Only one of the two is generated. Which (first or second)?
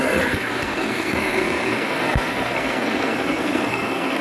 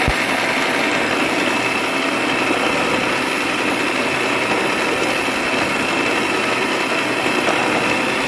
first